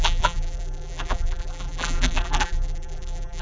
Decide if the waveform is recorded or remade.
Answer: remade